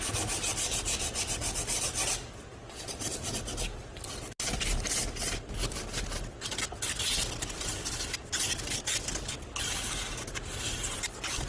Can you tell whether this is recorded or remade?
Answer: recorded